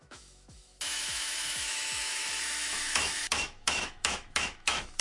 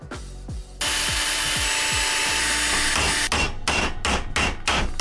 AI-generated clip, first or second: first